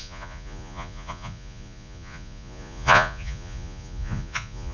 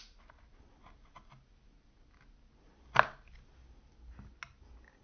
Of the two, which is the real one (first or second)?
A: second